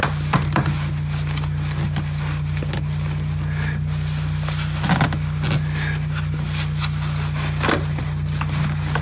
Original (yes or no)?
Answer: yes